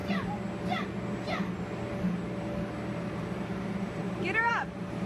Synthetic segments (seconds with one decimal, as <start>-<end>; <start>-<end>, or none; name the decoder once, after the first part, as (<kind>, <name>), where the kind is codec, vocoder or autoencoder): 3.1-5.1 (vocoder, BigVGAN v2)